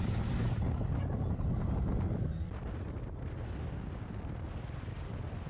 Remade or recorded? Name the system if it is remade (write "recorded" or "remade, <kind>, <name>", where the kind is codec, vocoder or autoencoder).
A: remade, vocoder, BigVGAN v2